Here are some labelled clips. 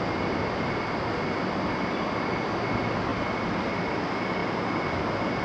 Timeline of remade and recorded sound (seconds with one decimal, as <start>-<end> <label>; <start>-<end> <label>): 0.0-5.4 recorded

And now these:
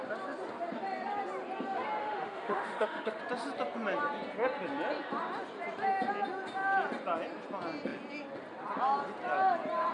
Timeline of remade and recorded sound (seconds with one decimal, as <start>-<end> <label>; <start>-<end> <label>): 0.0-2.0 recorded; 2.0-3.2 remade; 3.2-9.9 recorded

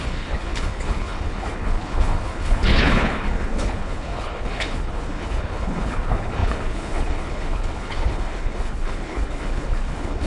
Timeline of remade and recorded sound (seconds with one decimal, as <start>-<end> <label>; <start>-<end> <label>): 0.0-10.3 remade

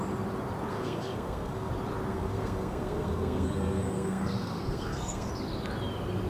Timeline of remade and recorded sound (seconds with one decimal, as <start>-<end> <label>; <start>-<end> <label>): 0.0-0.7 recorded; 0.7-1.7 remade; 1.7-2.1 recorded; 2.1-5.3 remade; 5.3-6.3 recorded